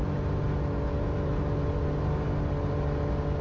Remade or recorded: recorded